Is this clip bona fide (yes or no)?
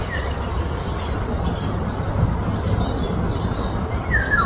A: yes